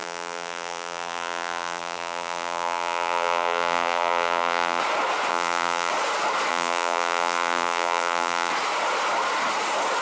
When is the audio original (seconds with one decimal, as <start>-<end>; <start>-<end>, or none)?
4.8-5.3; 5.9-6.5; 8.5-10.0